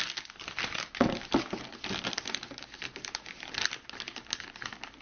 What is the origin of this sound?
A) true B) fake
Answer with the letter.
A